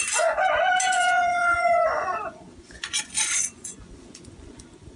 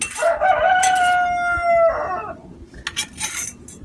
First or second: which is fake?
first